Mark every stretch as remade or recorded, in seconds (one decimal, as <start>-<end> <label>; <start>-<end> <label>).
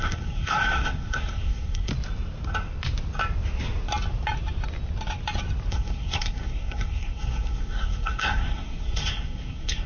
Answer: 0.0-1.9 remade; 1.9-5.7 recorded; 5.7-9.9 remade